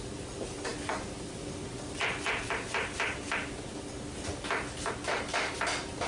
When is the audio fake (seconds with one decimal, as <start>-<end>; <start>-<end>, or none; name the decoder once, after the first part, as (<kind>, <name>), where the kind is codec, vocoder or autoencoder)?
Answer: none